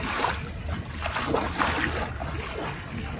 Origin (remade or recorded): recorded